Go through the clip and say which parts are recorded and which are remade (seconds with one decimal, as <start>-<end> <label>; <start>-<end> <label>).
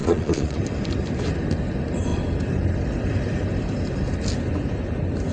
0.0-0.6 remade; 0.6-5.3 recorded